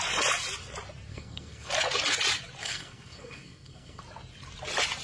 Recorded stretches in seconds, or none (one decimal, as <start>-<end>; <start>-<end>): 0.0-1.1; 1.7-2.6; 4.0-5.0